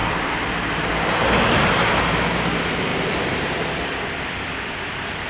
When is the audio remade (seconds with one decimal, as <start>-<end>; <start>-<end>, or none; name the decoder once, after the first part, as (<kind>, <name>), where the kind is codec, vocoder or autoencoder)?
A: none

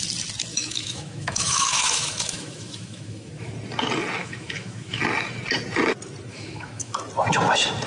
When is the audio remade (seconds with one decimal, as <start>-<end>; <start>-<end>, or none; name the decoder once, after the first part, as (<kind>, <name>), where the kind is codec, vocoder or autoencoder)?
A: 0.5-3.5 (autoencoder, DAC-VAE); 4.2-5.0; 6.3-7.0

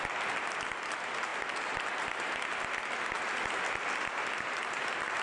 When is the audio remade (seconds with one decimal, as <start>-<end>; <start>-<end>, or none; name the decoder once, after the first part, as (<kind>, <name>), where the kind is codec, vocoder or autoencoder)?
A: none

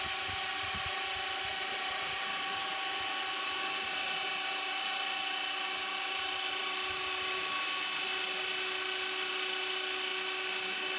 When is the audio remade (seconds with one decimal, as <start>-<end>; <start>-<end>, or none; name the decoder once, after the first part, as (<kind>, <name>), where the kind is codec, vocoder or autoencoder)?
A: none